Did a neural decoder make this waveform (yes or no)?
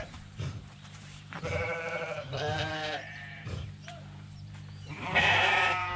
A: yes